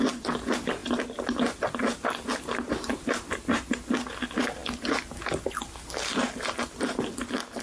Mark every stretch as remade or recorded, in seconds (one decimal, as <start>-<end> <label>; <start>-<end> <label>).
0.0-7.6 recorded